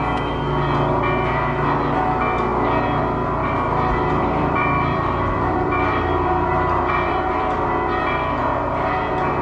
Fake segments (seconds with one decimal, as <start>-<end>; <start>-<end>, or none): 3.4-8.4